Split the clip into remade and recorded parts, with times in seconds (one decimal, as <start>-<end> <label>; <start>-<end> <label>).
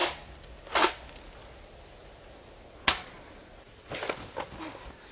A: 0.0-5.1 recorded